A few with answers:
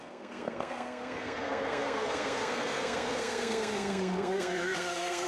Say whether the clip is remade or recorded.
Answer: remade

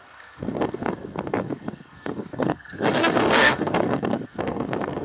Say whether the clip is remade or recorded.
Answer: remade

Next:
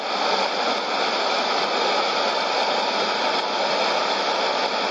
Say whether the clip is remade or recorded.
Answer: recorded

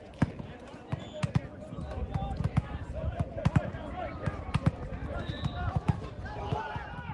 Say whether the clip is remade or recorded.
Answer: recorded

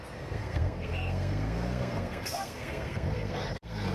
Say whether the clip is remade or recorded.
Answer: remade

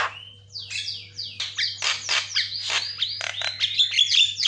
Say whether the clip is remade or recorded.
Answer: recorded